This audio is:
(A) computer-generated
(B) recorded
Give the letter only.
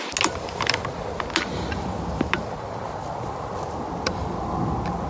B